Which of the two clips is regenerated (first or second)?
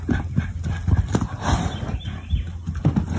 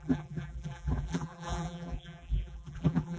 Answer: second